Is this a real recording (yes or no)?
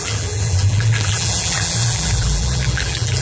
no